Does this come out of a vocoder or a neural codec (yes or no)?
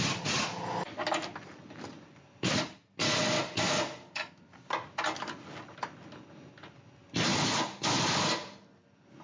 no